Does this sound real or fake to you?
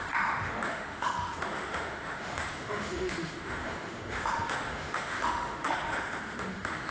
fake